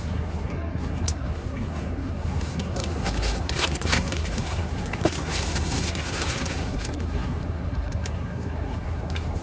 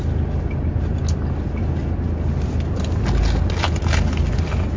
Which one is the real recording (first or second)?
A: second